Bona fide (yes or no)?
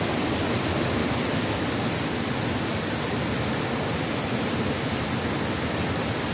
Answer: yes